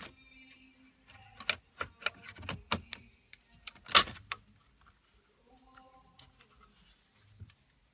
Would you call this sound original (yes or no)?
yes